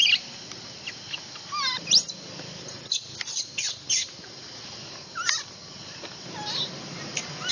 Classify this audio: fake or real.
real